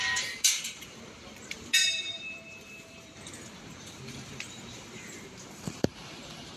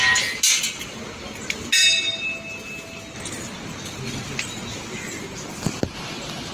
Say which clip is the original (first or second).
second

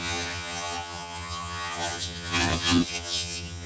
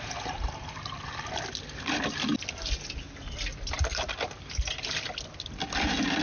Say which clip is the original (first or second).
second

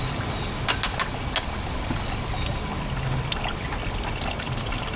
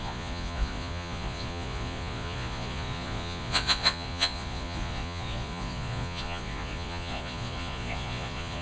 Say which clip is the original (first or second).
first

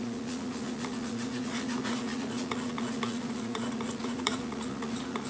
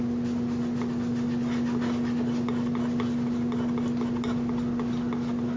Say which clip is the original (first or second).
second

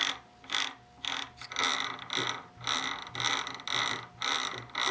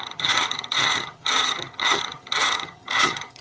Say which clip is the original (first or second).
first